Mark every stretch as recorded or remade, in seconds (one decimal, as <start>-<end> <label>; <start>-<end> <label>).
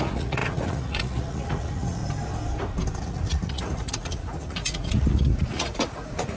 0.0-2.0 remade; 2.0-3.0 recorded; 3.0-6.4 remade